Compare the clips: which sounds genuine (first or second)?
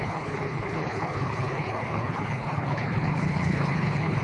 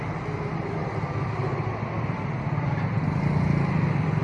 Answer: second